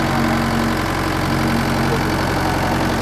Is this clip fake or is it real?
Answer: real